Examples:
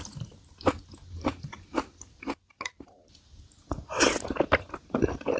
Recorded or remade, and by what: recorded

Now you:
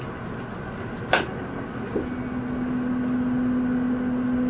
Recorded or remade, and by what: recorded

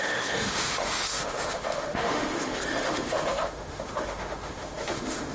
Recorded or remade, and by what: remade, autoencoder, DAC-VAE